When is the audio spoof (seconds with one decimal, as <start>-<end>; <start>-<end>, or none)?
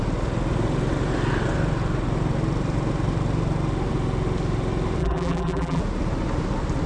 5.0-5.8